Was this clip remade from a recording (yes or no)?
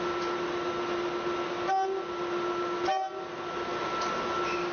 no